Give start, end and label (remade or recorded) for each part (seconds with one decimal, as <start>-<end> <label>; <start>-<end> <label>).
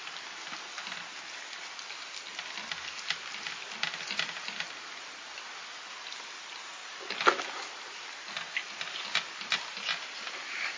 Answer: 0.0-10.8 recorded